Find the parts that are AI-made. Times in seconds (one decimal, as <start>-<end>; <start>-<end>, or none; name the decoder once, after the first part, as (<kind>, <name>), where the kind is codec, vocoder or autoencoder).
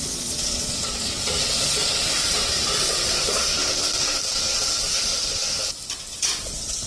0.0-3.5 (vocoder, Vocos); 4.8-5.4; 6.4-6.9